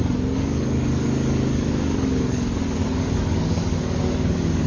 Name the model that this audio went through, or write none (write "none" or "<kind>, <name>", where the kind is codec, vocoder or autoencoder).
codec, DAC